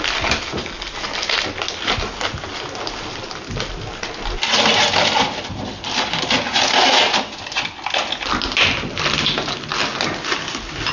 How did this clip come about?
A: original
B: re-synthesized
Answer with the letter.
A